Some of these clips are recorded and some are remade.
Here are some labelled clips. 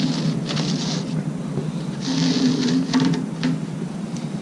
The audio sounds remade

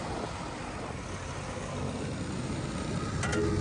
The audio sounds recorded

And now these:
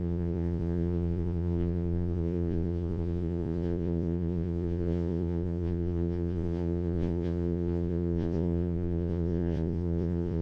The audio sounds remade